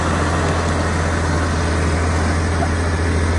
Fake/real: real